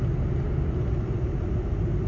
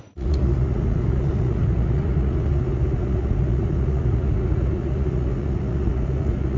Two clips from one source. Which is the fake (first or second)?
second